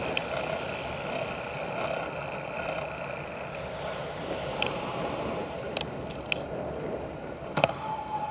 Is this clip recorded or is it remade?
recorded